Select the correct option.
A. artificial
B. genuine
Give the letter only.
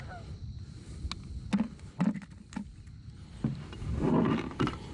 B